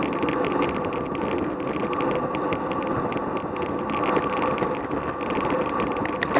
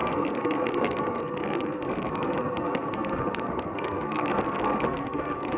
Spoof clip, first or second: second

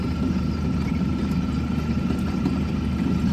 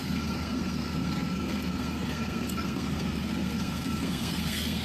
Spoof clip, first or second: second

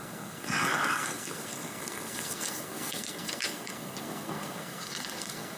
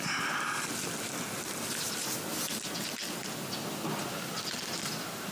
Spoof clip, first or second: first